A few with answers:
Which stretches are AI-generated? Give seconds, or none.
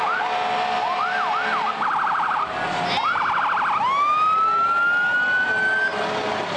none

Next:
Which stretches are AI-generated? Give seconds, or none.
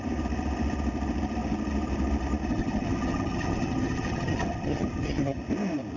2.5-5.4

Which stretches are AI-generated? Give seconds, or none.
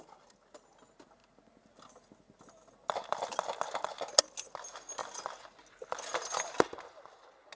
none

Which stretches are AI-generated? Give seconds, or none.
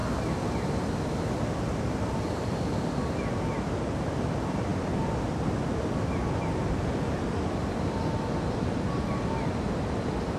none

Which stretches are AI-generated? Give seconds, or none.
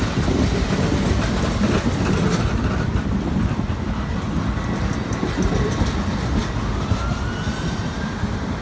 6.4-7.8